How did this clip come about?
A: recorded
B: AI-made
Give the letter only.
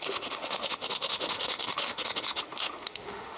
B